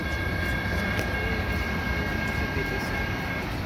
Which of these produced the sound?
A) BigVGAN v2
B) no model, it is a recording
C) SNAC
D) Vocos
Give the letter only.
B